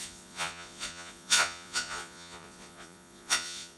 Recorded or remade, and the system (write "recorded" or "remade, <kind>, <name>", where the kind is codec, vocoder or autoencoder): remade, vocoder, Vocos